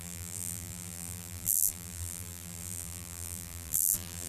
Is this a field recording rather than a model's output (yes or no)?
no